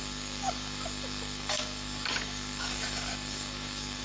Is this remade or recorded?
remade